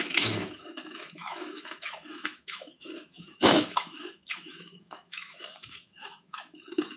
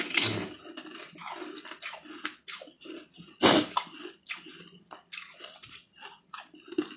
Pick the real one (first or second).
second